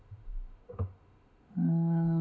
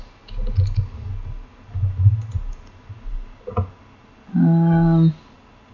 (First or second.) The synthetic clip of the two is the first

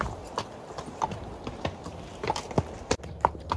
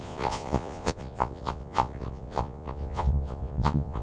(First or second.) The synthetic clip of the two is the second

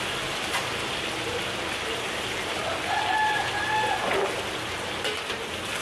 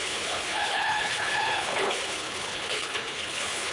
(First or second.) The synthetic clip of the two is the second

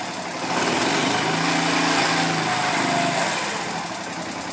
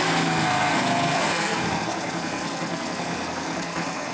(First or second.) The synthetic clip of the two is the second